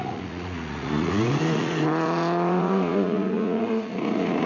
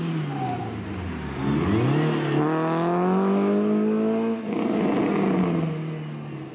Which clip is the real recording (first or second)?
second